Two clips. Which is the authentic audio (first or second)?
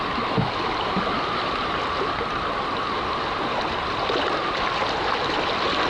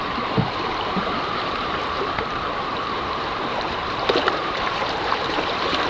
first